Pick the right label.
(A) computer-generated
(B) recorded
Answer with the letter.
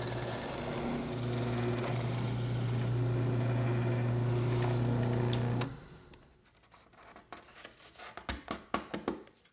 B